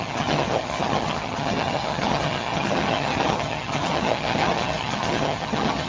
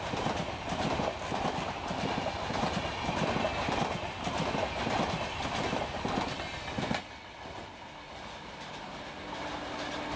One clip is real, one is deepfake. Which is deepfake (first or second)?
first